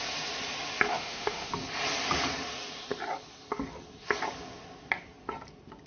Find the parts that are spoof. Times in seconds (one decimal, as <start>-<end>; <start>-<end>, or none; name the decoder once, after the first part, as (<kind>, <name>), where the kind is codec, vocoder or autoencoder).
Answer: 0.9-1.5 (autoencoder, DAC-VAE)